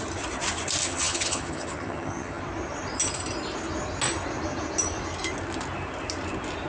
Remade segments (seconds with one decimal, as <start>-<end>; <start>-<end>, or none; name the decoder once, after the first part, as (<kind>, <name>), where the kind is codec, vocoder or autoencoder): 0.8-2.4 (vocoder, HiFi-GAN)